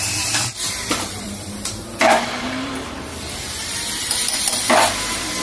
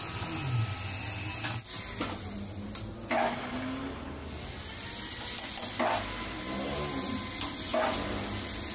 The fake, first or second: first